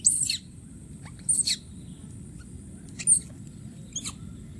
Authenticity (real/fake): real